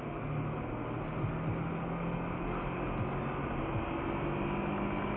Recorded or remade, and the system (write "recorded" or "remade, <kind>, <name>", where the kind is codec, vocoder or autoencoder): recorded